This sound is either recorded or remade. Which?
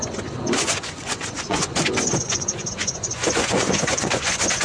remade